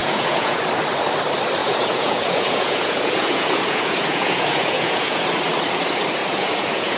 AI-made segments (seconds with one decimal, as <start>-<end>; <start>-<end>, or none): 0.0-0.6; 1.6-5.2; 6.2-7.0